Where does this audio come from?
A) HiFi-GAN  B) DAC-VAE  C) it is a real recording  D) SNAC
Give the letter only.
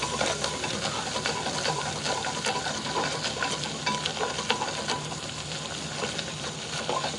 C